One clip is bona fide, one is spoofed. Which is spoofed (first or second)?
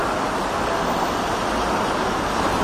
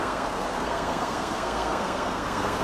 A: second